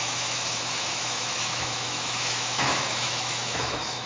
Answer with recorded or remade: remade